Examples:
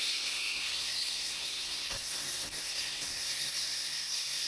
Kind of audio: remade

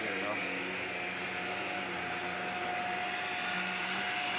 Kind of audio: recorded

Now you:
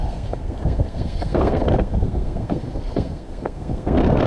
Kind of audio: remade